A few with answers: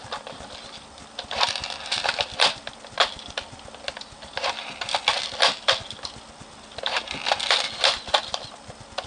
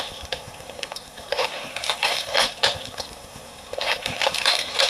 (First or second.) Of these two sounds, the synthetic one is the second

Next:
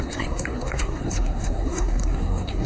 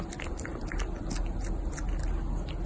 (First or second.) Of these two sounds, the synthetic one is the first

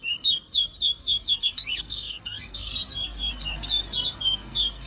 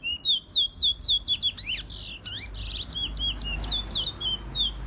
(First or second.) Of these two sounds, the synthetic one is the first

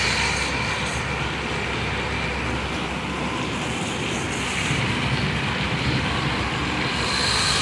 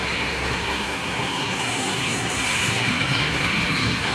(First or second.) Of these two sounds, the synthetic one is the second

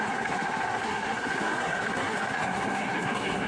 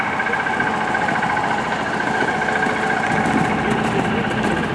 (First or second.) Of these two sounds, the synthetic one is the first